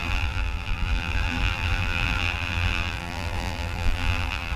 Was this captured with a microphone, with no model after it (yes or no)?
no